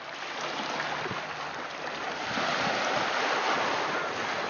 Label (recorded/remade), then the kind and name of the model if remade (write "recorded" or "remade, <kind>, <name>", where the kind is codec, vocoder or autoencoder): recorded